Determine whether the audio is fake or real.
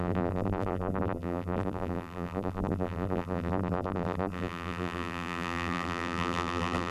fake